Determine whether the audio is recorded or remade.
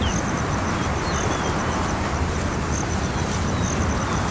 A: recorded